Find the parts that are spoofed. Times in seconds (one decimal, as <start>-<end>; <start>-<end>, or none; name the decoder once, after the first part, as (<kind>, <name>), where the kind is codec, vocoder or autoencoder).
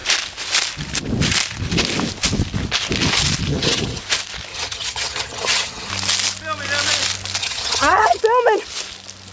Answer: 3.5-4.0 (vocoder, HiFi-GAN); 4.5-5.9; 7.4-8.2